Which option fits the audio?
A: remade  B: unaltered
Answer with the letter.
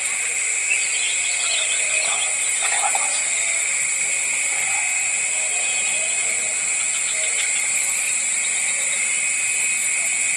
B